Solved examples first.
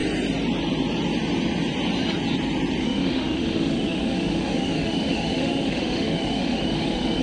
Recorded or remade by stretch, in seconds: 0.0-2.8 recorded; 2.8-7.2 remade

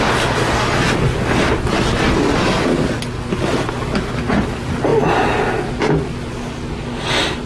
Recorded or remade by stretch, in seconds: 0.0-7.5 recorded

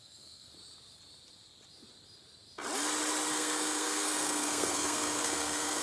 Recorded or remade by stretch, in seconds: 0.0-0.5 remade; 0.5-3.3 recorded; 3.3-5.8 remade